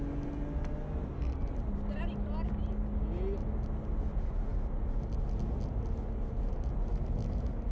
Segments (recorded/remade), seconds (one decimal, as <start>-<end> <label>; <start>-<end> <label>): 0.0-7.7 recorded